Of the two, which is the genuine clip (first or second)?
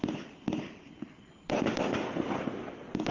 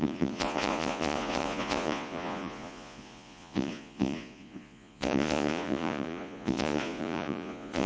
first